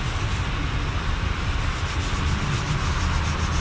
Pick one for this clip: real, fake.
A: real